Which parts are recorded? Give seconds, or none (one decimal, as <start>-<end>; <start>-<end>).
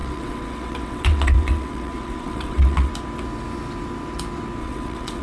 2.9-4.6